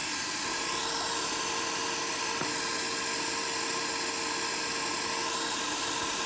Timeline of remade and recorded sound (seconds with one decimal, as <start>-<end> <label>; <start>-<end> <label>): 0.0-6.3 recorded